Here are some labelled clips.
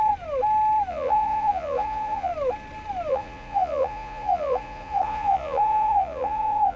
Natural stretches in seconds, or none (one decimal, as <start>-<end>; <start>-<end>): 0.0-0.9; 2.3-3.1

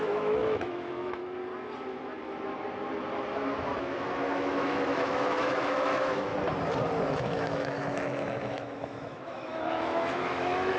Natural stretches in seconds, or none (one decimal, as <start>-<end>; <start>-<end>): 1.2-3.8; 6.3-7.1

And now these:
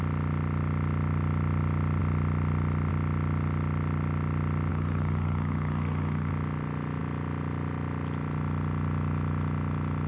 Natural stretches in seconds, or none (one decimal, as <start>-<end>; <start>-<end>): 0.0-4.7; 6.3-10.1